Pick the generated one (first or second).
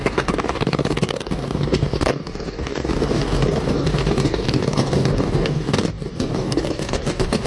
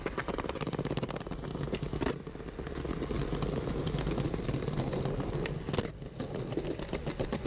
first